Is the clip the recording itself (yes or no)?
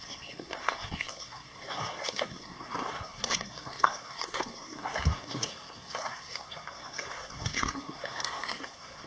no